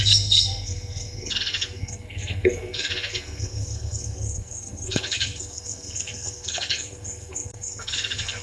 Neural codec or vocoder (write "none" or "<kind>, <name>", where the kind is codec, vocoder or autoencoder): codec, SNAC